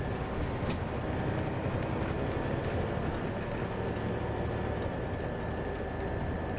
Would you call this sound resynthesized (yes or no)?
no